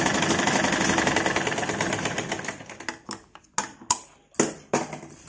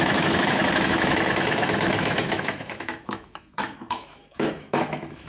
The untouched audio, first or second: first